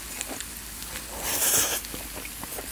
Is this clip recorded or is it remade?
recorded